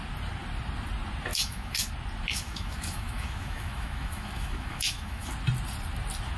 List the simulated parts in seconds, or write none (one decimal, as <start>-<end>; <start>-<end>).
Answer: 1.3-1.9; 2.3-5.3